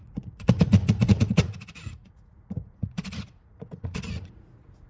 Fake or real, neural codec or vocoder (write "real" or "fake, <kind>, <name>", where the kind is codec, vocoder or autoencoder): fake, vocoder, Vocos